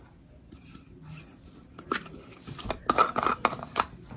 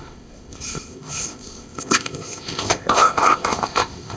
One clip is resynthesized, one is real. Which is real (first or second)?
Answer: first